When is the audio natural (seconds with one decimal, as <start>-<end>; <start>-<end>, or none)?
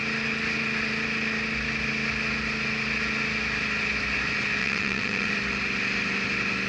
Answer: 0.0-4.6; 5.3-6.7